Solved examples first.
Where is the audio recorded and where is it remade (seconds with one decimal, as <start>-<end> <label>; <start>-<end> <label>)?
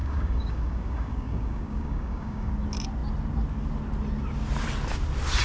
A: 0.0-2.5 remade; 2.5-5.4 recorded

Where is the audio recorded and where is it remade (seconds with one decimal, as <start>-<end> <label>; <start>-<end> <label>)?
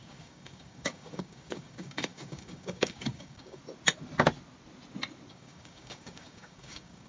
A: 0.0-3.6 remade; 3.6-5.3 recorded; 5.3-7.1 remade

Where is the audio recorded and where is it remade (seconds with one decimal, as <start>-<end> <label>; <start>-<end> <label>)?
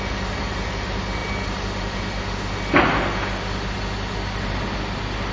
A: 0.0-5.3 recorded